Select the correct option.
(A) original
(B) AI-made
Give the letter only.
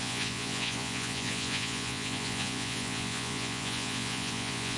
B